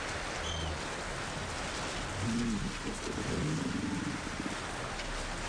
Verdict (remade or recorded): recorded